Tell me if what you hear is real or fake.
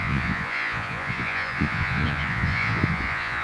fake